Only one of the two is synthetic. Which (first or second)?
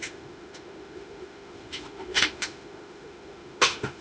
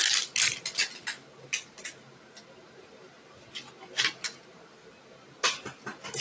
first